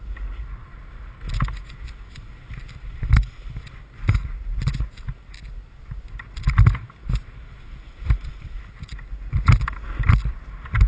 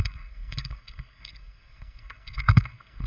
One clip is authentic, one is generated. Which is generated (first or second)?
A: second